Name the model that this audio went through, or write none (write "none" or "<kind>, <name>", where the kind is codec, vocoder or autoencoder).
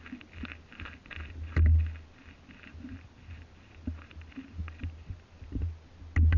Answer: none